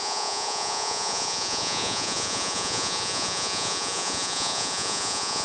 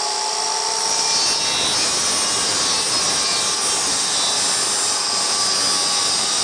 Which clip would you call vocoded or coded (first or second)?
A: first